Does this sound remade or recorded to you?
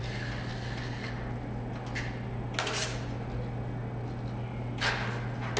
recorded